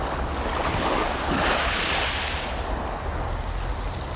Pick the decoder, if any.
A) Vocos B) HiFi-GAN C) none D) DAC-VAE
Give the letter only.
C